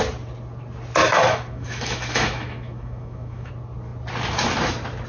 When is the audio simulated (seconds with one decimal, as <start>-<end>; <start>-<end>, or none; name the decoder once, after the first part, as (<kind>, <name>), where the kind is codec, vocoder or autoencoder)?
1.0-3.5 (autoencoder, DAC-VAE)